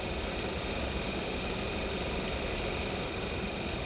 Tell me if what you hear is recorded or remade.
recorded